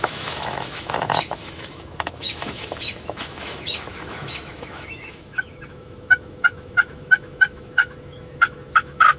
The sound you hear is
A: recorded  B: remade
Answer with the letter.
B